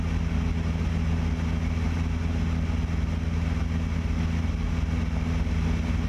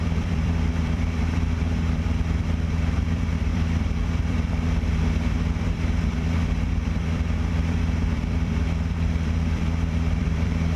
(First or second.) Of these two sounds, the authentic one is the first